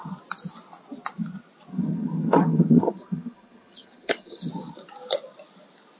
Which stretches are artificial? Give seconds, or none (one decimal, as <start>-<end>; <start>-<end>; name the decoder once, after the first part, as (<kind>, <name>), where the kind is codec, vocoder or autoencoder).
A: 1.7-4.5 (vocoder, HiFi-GAN)